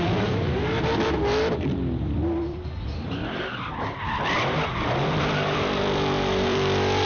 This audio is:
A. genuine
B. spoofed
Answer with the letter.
B